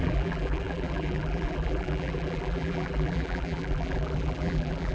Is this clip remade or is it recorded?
remade